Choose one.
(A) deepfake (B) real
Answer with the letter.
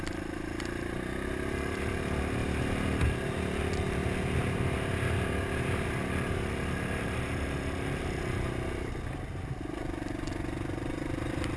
B